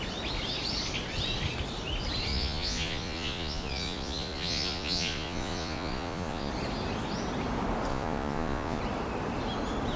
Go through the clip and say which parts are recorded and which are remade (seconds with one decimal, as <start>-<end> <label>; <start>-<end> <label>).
0.0-2.3 recorded; 2.3-6.5 remade; 6.5-7.9 recorded; 7.9-8.8 remade; 8.8-10.0 recorded